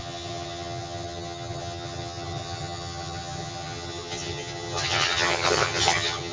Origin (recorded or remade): remade